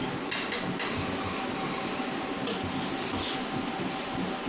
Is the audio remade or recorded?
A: recorded